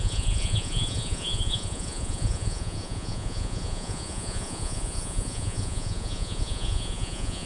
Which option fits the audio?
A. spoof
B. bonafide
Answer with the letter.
A